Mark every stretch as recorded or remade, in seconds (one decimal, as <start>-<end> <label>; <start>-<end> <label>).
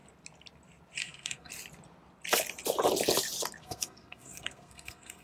0.0-1.0 recorded; 1.0-1.5 remade; 1.5-3.6 recorded; 3.6-5.2 remade